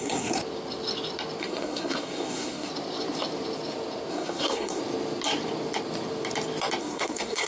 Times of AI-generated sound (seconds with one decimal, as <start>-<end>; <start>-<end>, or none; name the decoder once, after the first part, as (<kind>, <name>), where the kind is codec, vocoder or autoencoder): 0.0-0.4 (codec, SNAC); 1.4-2.7; 4.1-4.8; 6.8-7.5